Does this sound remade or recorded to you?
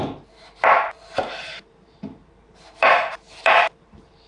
remade